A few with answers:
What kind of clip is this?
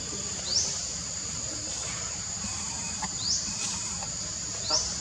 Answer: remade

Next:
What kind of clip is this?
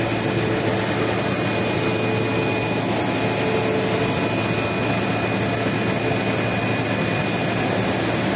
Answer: recorded